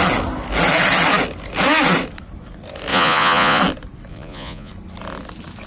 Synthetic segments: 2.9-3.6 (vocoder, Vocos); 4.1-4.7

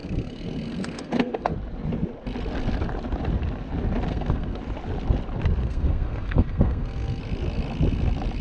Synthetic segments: 0.0-1.5 (codec, SNAC); 4.1-4.6; 5.6-7.2

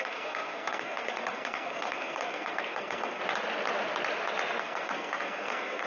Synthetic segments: 0.0-3.2 (codec, SNAC); 4.6-5.9

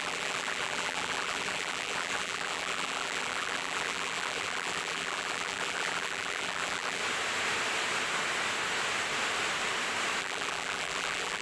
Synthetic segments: 0.0-7.0 (vocoder, BigVGAN v2); 10.2-11.4

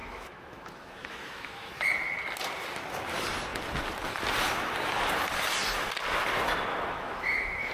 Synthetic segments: 0.0-1.7 (autoencoder, DAC-VAE); 6.7-7.7

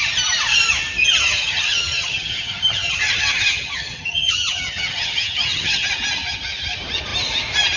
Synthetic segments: 1.2-5.9 (vocoder, HiFi-GAN)

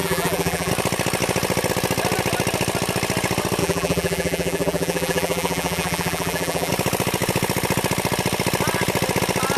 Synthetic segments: 0.0-0.7 (vocoder, BigVGAN v2); 3.6-6.7

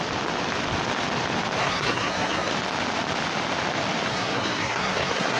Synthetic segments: 1.6-2.5 (codec, SNAC); 4.1-5.4